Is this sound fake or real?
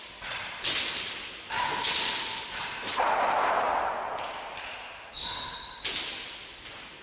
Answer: real